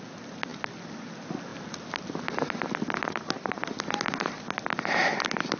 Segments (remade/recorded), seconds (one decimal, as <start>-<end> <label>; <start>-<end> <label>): 0.0-5.6 recorded

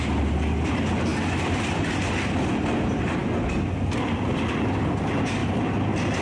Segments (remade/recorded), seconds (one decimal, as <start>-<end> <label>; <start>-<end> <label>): 0.0-3.2 remade; 3.2-4.3 recorded; 4.3-5.4 remade; 5.4-6.2 recorded

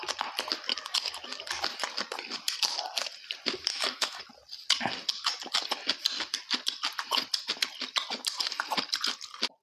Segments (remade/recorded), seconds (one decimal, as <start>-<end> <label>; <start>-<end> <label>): 0.0-3.7 recorded; 3.7-4.2 remade; 4.2-9.6 recorded

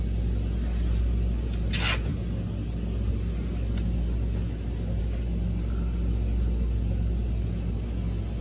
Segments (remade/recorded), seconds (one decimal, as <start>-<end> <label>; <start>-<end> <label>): 0.0-8.4 recorded

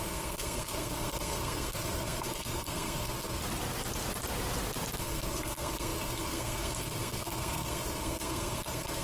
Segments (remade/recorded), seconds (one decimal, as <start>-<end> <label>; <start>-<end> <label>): 0.0-3.4 remade; 3.4-5.0 recorded; 5.0-9.0 remade

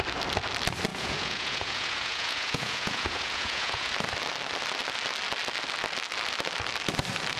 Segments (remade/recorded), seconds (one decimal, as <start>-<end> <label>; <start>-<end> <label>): 0.0-0.9 recorded; 0.9-3.9 remade; 3.9-7.4 recorded

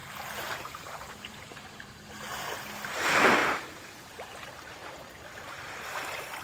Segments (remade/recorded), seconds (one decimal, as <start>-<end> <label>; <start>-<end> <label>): 0.0-2.3 remade; 2.3-3.4 recorded; 3.4-4.3 remade; 4.3-6.4 recorded